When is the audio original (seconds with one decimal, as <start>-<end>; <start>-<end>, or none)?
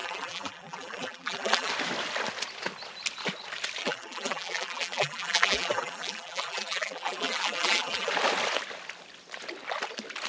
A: 1.7-3.8; 8.1-10.3